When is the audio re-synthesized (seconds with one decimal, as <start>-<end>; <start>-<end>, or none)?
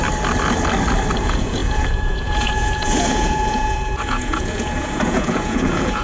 1.2-6.0